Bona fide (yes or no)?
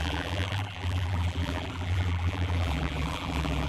no